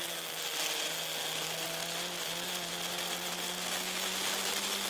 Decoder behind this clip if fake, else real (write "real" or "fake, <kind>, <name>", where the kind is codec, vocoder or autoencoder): real